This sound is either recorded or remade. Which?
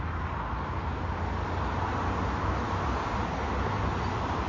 recorded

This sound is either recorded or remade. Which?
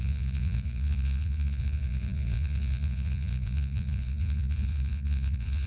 remade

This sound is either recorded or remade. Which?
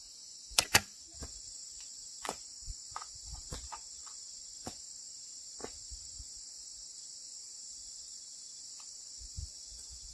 remade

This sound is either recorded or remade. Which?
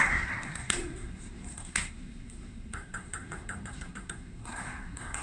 remade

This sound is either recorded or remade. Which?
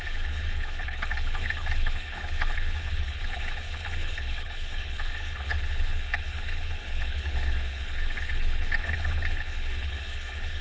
remade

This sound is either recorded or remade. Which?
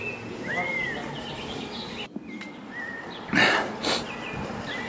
recorded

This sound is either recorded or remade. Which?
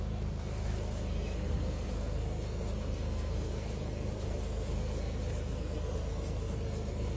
remade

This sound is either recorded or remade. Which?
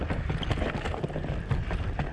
recorded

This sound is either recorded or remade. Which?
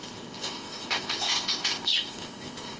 remade